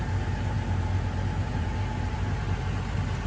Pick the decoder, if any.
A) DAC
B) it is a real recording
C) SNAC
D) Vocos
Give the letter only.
B